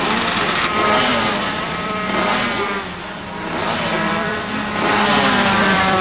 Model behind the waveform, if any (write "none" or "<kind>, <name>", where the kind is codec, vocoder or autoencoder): vocoder, BigVGAN v2